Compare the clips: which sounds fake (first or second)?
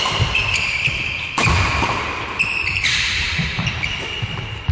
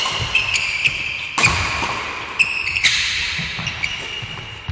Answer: first